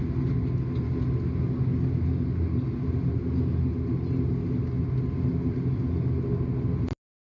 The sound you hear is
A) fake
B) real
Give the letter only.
B